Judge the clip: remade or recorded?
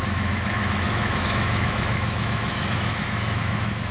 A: remade